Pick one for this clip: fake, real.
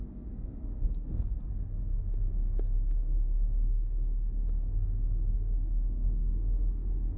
fake